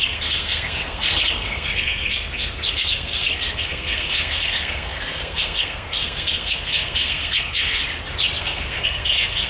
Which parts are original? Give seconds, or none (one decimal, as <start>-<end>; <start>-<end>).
7.8-8.4